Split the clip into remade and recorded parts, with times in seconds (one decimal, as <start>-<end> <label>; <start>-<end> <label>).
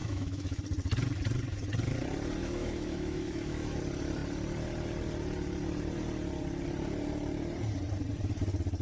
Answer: 0.0-0.6 remade; 0.6-2.4 recorded; 2.4-3.8 remade; 3.8-8.8 recorded